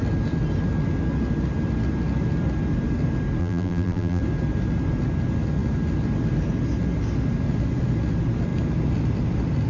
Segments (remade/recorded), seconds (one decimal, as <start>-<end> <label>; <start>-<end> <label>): 0.0-3.4 recorded; 3.4-4.2 remade; 4.2-9.7 recorded